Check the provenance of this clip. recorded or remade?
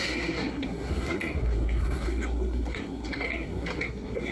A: remade